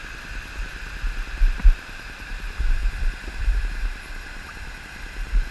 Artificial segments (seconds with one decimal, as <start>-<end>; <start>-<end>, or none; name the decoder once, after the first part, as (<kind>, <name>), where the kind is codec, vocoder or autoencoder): none